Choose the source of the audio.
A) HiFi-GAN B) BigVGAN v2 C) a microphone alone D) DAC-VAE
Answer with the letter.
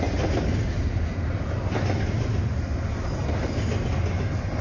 C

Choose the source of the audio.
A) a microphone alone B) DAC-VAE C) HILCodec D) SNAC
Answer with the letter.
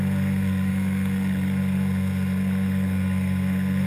D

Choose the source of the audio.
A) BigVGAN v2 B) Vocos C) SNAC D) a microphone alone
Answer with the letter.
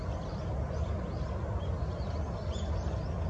D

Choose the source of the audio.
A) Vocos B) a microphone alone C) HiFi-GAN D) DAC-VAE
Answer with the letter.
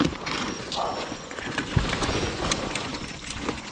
A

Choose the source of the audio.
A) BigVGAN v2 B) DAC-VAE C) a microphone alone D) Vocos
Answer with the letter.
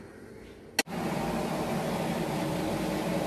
C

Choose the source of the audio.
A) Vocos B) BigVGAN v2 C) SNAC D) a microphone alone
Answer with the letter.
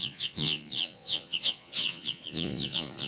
A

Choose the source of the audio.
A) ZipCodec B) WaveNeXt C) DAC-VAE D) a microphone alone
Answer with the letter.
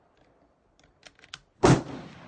D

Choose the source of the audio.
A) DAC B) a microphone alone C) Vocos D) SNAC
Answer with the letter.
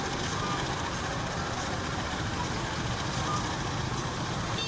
B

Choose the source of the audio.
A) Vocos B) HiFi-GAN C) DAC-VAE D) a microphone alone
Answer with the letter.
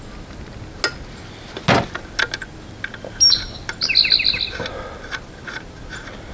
D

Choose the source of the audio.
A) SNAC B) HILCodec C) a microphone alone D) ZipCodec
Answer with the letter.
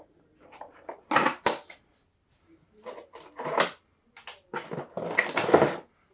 C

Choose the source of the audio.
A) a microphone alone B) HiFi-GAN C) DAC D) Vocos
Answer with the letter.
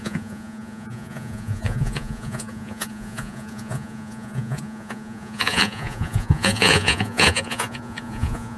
D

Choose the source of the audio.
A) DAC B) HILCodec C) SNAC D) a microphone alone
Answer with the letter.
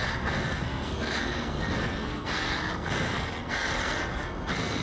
C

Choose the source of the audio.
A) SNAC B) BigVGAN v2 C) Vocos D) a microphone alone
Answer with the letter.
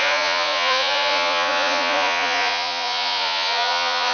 C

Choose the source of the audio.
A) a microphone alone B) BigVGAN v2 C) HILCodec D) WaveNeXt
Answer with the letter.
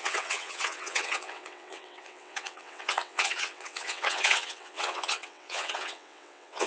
D